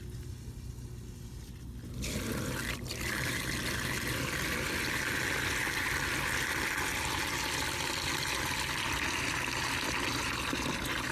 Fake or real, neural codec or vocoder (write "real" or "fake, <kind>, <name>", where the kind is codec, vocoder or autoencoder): real